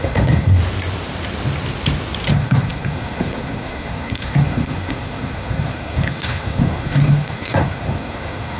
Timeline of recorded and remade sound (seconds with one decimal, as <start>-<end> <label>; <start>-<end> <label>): 0.0-0.6 remade; 0.6-2.3 recorded; 2.3-8.6 remade